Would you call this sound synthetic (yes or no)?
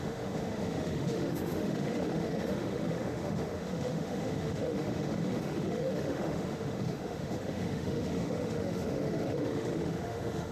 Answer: yes